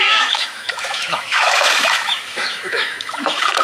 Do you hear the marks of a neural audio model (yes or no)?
yes